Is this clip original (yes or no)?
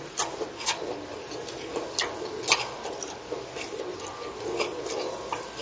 yes